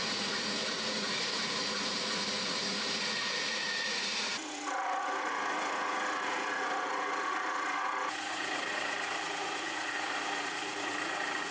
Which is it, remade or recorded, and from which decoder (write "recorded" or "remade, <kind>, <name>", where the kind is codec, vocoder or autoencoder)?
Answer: remade, vocoder, Vocos